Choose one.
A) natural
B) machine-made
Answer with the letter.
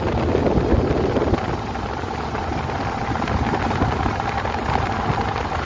A